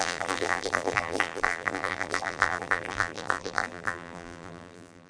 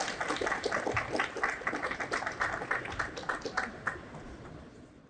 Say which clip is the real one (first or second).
second